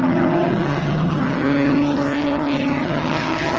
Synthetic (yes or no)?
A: yes